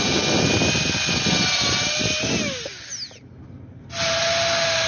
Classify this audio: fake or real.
real